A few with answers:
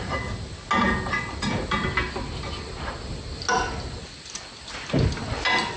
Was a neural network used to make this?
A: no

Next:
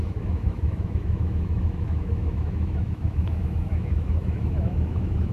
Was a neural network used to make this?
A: yes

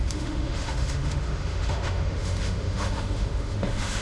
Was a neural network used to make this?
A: yes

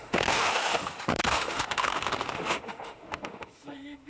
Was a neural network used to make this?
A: yes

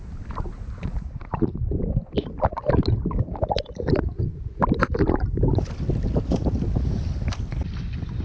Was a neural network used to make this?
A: no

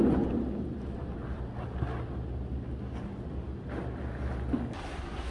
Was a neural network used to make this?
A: no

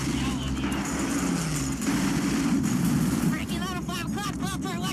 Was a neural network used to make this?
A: no